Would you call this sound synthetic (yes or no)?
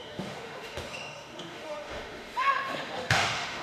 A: yes